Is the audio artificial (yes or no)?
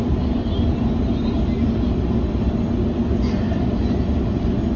no